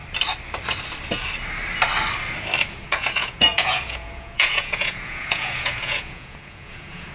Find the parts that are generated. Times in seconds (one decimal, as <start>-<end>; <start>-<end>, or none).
2.7-7.1